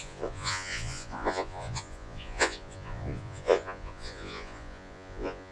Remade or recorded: remade